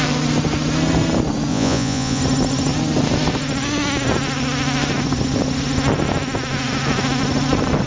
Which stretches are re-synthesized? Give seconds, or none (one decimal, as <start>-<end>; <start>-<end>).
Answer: 1.5-2.2